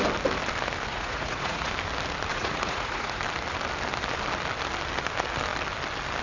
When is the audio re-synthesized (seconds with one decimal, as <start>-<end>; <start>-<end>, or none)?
0.9-1.7; 2.3-3.2